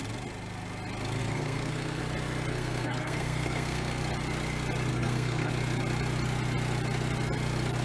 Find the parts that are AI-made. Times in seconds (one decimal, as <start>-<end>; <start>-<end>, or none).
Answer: 1.2-2.0; 2.5-4.0; 4.9-5.5